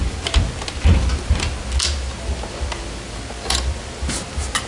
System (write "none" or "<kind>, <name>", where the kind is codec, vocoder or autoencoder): none